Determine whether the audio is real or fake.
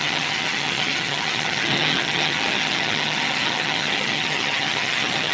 fake